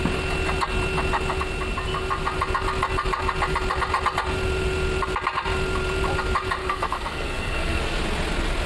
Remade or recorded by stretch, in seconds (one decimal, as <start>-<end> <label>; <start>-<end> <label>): 0.0-6.6 recorded; 6.6-8.0 remade; 8.0-8.7 recorded